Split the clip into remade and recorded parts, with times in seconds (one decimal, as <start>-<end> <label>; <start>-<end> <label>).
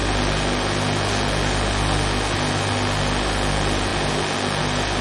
0.0-5.0 recorded